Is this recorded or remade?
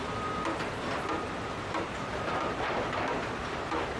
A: remade